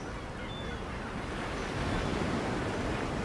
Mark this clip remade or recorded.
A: recorded